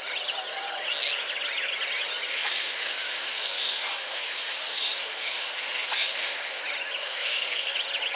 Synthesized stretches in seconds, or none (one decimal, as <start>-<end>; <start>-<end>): 2.3-6.6; 7.0-7.7